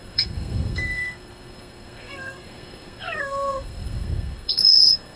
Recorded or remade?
remade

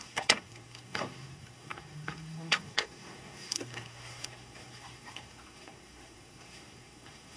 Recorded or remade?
remade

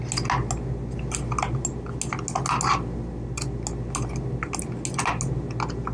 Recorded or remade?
recorded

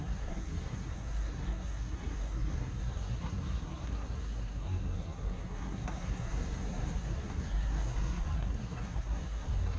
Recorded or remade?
remade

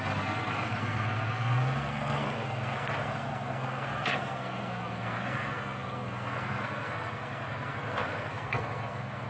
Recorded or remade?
remade